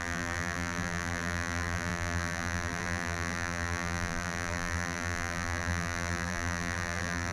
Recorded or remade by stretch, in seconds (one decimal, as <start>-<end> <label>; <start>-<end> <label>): 0.0-7.3 remade

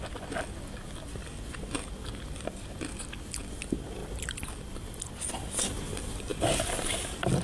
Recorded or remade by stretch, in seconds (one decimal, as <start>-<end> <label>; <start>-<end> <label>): 0.0-4.0 recorded; 4.0-5.0 remade; 5.0-7.4 recorded

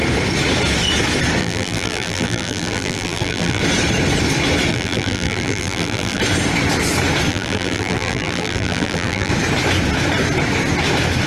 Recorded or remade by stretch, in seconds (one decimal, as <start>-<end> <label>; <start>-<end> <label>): 0.0-1.4 recorded; 1.4-3.6 remade; 3.6-4.7 recorded; 4.7-6.2 remade; 6.2-7.3 recorded; 7.3-9.3 remade; 9.3-11.3 recorded

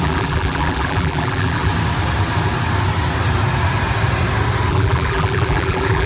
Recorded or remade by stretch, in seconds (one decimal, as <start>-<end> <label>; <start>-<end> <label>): 0.0-1.7 remade; 1.7-4.7 recorded; 4.7-6.1 remade

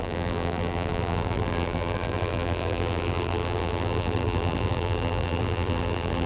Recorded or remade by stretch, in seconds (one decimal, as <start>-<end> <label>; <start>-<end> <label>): 0.0-6.3 remade

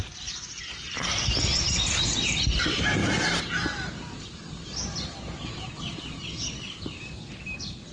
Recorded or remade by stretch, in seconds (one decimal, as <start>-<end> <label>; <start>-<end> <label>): 0.0-7.9 recorded

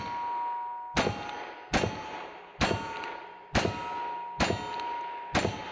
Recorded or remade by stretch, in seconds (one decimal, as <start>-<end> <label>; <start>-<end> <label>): 0.0-5.7 recorded

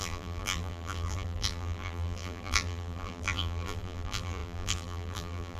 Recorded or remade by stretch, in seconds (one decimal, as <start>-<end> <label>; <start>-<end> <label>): 0.0-5.6 remade